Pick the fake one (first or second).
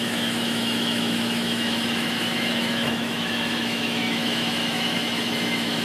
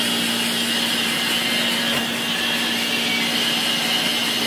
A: first